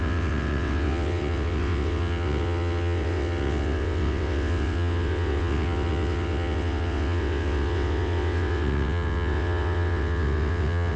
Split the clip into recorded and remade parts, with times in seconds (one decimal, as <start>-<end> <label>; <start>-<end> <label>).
0.0-11.0 remade